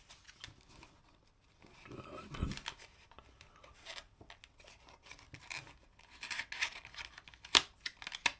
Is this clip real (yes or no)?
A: yes